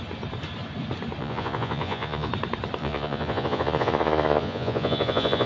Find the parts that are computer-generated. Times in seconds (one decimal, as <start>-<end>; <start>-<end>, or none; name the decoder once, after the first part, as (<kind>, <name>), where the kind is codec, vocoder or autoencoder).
1.2-2.3 (vocoder, Vocos); 2.8-5.5